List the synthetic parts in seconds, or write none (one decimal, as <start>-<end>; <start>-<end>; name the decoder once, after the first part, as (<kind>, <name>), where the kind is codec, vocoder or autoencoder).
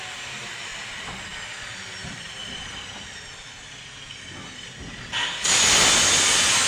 0.7-4.7 (vocoder, BigVGAN v2)